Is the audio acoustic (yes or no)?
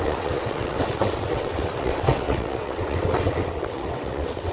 no